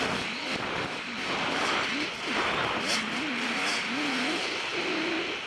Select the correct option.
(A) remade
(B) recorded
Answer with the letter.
B